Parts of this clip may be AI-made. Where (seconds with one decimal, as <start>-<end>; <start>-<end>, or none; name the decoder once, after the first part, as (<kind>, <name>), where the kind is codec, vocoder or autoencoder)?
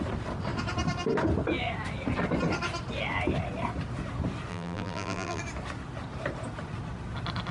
4.5-5.4 (vocoder, BigVGAN v2)